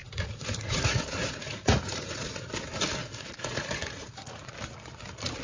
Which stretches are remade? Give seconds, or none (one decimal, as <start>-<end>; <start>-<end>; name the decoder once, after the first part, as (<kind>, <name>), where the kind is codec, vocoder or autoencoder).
0.0-2.5 (vocoder, Vocos); 3.0-4.5